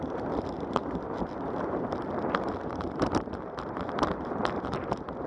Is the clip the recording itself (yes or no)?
no